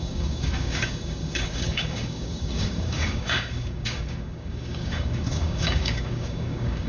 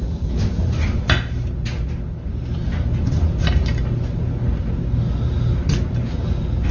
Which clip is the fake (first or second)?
first